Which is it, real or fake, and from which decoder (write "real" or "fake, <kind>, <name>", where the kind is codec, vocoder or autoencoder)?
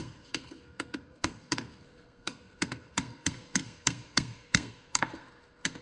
fake, codec, SNAC